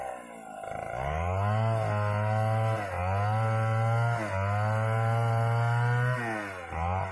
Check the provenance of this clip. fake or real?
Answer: real